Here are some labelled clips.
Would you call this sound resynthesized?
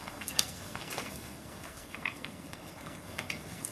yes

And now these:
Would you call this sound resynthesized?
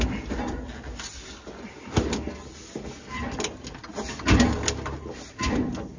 no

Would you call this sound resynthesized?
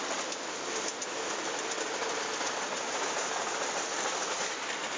no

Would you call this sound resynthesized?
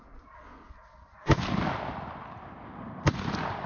no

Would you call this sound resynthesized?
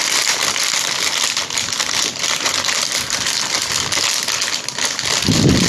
no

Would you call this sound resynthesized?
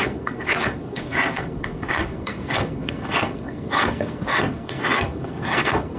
yes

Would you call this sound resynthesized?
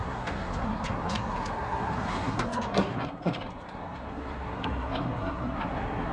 yes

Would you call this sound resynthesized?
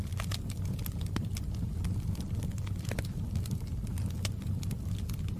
no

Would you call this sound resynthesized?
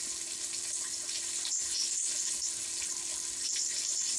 no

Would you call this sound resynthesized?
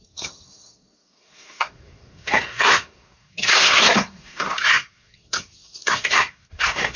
yes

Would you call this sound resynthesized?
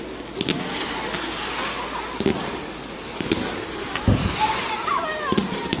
no